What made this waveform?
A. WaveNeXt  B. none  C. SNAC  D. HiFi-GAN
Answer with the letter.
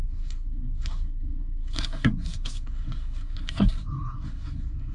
C